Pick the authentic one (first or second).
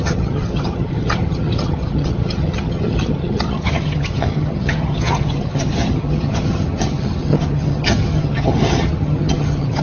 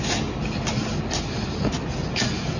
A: second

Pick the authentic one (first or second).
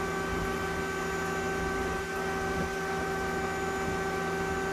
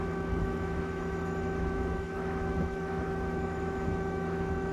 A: first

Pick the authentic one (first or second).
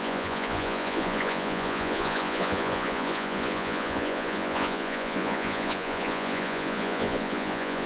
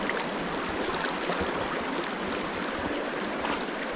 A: second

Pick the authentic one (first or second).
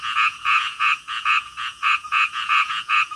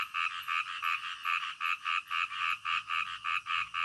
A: second